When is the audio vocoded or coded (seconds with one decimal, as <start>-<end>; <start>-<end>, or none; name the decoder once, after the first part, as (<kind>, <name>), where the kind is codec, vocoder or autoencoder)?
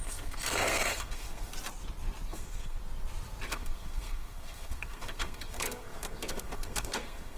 0.0-1.5 (codec, SNAC); 2.3-2.8; 3.5-7.4